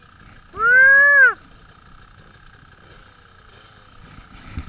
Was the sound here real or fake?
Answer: real